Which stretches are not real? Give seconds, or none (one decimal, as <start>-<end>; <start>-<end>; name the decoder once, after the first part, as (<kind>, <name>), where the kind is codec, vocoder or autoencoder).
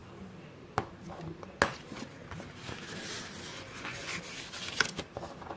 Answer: 3.5-4.1 (vocoder, Vocos)